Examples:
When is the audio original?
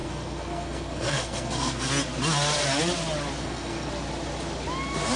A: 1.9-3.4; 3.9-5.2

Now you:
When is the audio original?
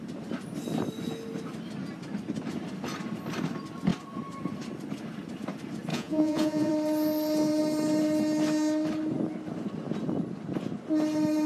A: 0.0-5.9; 6.7-11.5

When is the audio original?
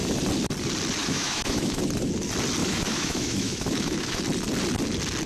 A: 0.0-1.0; 1.8-2.6; 4.2-5.3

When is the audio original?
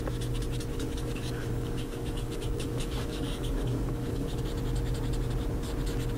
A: 0.0-0.7; 4.4-6.2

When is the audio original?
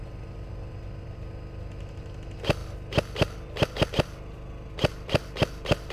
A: 0.0-5.9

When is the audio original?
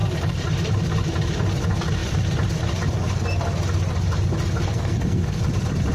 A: 0.0-4.7; 5.4-5.9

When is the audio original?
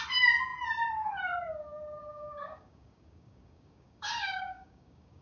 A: 0.0-2.0